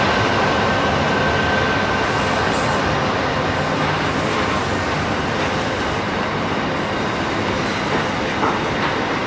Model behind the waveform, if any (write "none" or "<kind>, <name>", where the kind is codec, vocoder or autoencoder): none